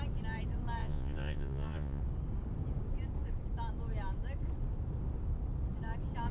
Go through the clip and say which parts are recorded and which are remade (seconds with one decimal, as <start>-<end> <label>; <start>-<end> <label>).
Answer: 0.0-0.8 recorded; 0.8-2.0 remade; 2.0-6.3 recorded